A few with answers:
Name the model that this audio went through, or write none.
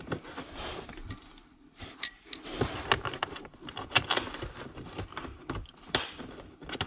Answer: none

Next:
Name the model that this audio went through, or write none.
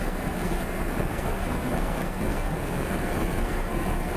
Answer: codec, SNAC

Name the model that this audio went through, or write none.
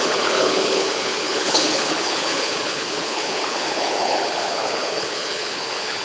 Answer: codec, HILCodec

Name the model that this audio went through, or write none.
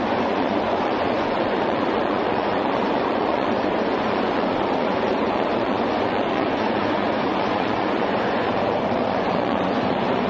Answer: vocoder, Vocos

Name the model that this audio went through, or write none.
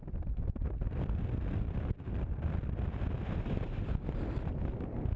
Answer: vocoder, BigVGAN v2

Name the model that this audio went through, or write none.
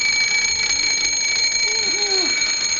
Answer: none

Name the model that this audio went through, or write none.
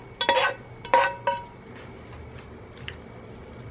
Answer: none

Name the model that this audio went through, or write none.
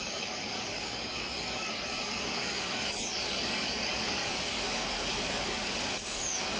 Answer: codec, DAC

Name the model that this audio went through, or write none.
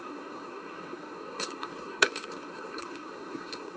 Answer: codec, SNAC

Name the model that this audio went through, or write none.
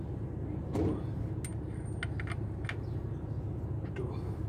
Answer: none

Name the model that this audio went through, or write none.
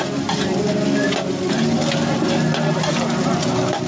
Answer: none